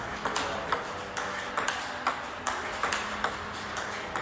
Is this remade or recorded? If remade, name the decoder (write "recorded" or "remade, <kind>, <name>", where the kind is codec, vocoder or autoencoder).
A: recorded